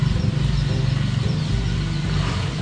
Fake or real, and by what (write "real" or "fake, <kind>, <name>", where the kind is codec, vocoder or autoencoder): real